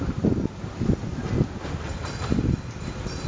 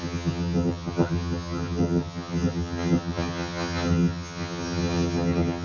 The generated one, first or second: second